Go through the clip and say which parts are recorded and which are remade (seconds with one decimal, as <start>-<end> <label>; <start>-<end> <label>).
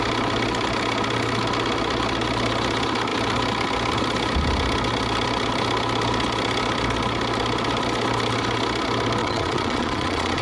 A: 0.0-9.2 recorded; 9.2-10.4 remade